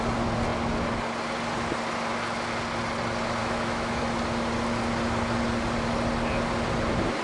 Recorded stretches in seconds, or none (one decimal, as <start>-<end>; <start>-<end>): 0.0-3.4; 4.0-7.2